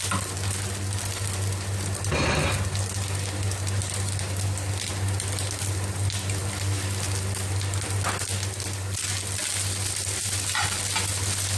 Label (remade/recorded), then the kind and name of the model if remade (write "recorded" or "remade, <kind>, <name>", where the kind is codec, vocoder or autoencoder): recorded